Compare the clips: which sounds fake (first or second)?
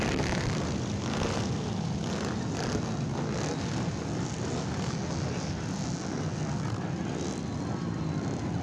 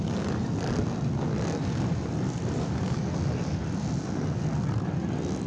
second